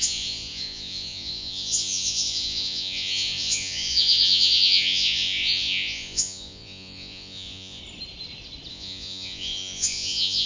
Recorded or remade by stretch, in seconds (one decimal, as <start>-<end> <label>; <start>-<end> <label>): 0.0-7.8 remade; 7.8-8.7 recorded; 8.7-10.5 remade